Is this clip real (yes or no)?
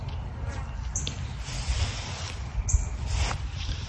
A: yes